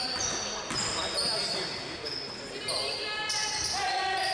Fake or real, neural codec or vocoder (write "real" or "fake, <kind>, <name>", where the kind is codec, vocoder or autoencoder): real